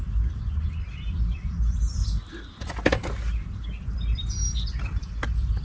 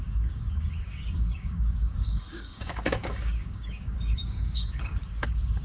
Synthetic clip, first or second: second